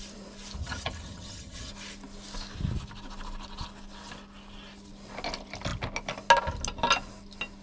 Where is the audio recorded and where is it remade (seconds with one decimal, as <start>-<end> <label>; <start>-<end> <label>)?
0.0-0.6 recorded; 0.6-1.7 remade; 1.7-7.6 recorded